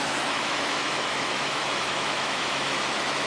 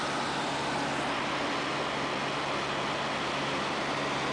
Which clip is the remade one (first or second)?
first